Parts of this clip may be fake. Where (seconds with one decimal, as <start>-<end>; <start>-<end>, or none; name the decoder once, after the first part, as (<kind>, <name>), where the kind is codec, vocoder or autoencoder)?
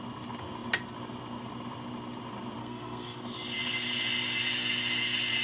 2.6-3.2 (codec, SNAC)